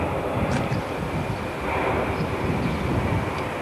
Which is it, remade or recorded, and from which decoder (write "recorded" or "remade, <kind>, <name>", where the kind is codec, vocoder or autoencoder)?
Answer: recorded